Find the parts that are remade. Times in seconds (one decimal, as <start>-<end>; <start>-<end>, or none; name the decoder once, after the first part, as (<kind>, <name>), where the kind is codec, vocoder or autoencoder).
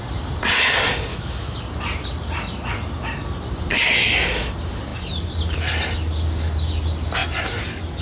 1.1-1.6 (autoencoder, DAC-VAE)